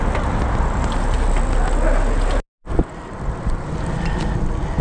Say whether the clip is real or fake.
real